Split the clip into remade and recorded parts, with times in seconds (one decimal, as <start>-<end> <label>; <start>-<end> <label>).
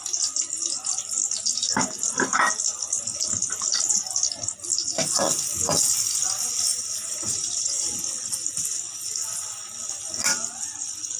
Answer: 0.0-6.7 recorded; 6.7-8.0 remade; 8.0-11.2 recorded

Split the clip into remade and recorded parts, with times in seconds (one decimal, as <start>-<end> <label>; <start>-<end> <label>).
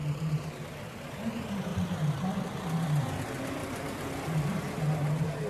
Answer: 0.0-1.1 remade; 1.1-1.7 recorded; 1.7-2.6 remade; 2.6-3.6 recorded; 3.6-4.6 remade; 4.6-5.5 recorded